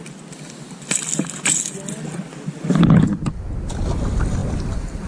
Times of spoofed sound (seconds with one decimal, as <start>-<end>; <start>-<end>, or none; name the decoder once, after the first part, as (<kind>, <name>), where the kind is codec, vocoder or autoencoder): none